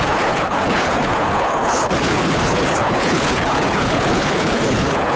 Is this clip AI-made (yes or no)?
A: yes